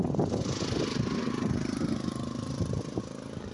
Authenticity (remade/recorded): recorded